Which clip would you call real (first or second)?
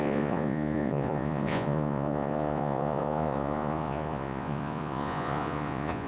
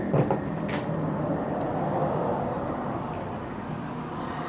second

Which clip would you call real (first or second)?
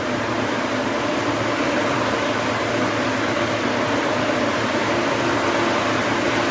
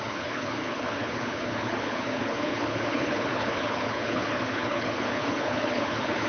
first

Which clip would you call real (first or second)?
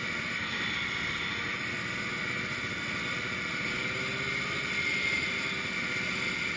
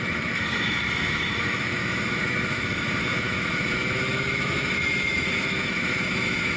first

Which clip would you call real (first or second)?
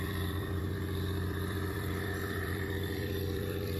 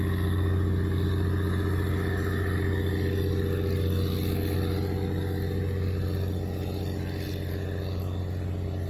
second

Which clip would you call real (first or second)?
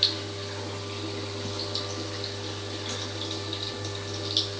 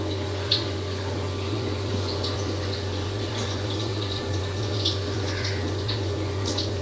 first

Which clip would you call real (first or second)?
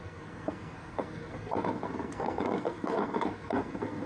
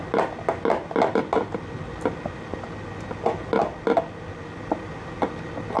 second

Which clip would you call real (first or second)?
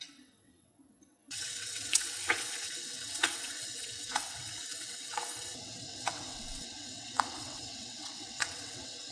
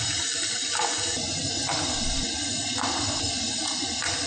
second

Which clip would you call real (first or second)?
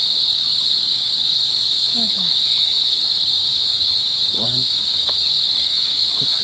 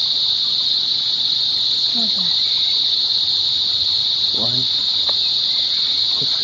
second